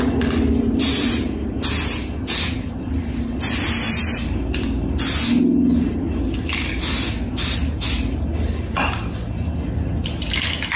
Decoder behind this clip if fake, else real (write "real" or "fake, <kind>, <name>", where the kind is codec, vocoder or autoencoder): real